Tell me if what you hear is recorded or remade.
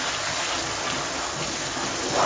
recorded